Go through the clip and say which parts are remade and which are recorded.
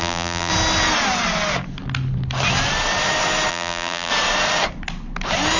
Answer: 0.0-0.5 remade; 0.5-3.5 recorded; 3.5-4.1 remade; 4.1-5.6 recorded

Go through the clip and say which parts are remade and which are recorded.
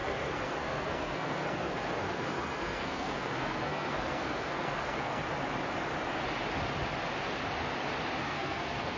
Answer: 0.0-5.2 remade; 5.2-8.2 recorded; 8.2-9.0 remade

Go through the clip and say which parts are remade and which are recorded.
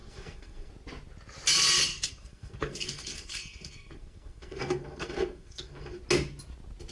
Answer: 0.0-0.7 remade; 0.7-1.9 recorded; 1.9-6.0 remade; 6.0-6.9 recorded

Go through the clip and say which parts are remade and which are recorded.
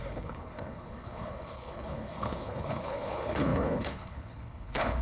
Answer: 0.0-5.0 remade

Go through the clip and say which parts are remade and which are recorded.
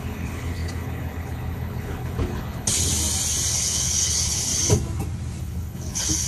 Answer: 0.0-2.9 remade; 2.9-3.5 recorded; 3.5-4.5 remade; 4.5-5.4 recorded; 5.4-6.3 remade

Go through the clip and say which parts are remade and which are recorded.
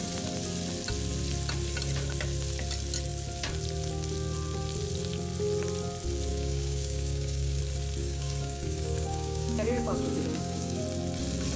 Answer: 0.0-6.3 recorded; 6.3-7.6 remade; 7.6-8.0 recorded; 8.0-10.8 remade; 10.8-11.6 recorded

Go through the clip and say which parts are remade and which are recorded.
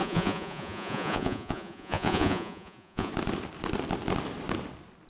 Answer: 0.0-3.1 remade; 3.1-5.1 recorded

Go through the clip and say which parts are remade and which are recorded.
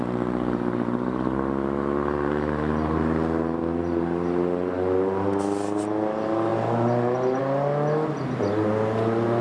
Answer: 0.0-9.4 recorded